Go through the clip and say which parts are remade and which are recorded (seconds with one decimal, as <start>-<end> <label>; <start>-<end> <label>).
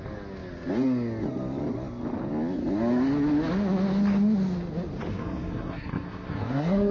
0.0-5.1 recorded; 5.1-6.9 remade